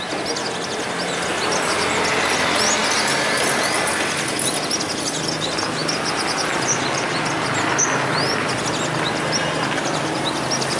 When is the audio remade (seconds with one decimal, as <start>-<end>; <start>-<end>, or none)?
none